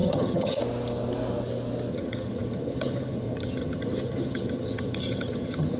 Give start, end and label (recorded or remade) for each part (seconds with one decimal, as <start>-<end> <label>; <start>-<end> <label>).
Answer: 0.0-0.6 remade; 0.6-1.9 recorded; 1.9-5.8 remade